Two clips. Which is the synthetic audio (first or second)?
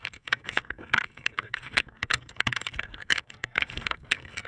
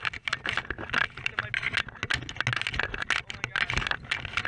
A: first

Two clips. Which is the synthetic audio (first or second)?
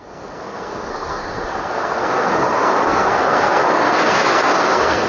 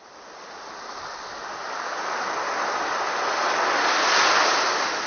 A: first